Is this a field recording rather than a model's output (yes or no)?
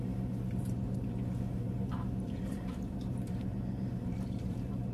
no